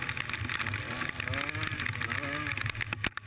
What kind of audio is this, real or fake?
real